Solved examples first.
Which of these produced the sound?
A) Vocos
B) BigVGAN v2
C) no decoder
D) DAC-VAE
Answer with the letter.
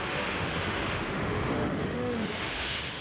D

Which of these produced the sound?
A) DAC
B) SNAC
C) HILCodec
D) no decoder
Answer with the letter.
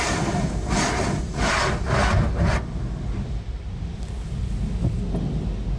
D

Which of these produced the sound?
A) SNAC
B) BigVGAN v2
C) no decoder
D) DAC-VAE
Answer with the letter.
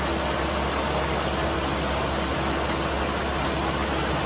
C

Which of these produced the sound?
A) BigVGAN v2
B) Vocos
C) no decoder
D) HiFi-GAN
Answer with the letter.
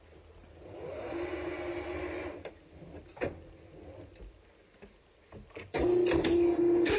C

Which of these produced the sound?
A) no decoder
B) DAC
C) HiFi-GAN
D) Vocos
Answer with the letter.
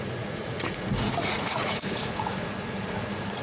D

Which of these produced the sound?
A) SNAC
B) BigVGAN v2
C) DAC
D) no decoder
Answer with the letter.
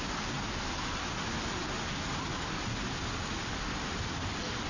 D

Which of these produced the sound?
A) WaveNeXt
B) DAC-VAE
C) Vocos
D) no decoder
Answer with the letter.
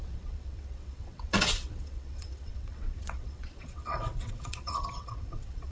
A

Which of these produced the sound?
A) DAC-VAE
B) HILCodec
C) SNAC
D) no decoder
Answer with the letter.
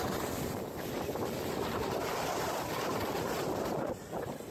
D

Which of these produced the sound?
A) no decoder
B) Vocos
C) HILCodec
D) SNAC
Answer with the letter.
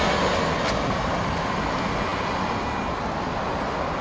A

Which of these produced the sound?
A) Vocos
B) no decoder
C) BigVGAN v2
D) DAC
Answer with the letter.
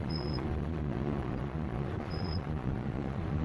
A